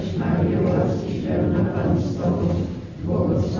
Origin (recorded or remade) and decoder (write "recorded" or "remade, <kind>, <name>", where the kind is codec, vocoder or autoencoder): remade, vocoder, BigVGAN v2